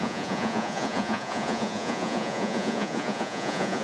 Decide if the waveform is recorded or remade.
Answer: remade